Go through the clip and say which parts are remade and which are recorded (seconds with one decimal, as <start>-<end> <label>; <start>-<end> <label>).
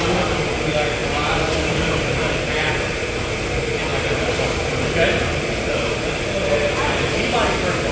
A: 0.0-3.9 recorded; 3.9-5.6 remade; 5.6-7.9 recorded